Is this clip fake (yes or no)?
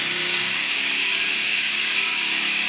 yes